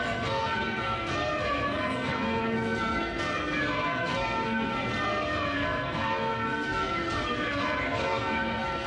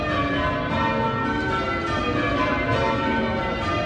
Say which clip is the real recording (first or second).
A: second